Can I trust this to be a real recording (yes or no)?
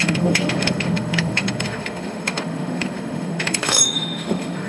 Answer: no